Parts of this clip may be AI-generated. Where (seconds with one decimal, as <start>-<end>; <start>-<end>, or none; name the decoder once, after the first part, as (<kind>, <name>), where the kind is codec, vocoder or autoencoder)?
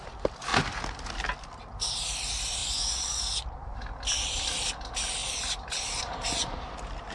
2.6-3.2 (vocoder, Vocos)